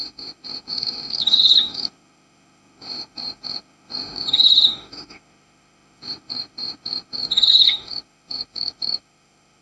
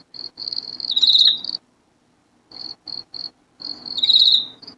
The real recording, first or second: second